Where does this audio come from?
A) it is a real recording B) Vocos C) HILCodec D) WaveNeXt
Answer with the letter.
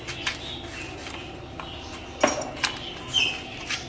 A